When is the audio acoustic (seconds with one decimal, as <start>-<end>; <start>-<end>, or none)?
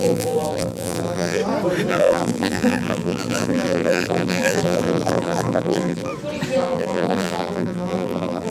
1.4-1.9; 6.1-6.6